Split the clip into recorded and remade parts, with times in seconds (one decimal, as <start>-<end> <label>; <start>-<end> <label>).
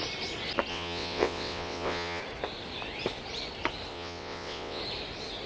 0.0-0.7 recorded; 0.7-2.2 remade; 2.2-3.9 recorded; 3.9-4.8 remade; 4.8-5.5 recorded